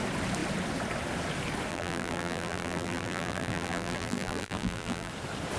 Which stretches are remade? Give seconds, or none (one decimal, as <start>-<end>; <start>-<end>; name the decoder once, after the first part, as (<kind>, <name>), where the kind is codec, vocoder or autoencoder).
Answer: 1.7-5.1 (vocoder, BigVGAN v2)